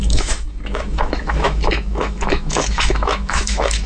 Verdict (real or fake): fake